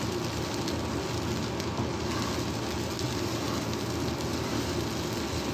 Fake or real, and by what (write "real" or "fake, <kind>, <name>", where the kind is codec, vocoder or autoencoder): real